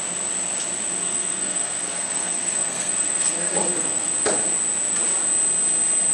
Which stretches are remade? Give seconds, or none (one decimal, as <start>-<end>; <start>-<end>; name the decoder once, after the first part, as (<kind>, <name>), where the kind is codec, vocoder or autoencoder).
1.0-4.1 (codec, SNAC)